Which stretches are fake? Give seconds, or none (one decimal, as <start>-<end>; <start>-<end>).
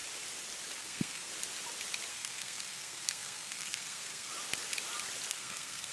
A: 0.8-1.3; 2.1-4.3; 5.3-5.9